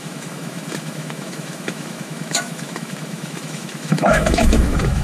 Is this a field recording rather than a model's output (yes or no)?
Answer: no